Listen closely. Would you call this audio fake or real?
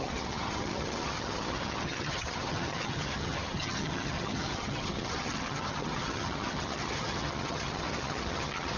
fake